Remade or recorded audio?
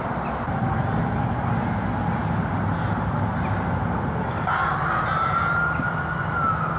recorded